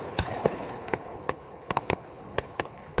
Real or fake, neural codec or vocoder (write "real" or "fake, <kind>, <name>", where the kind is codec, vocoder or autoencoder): fake, codec, HILCodec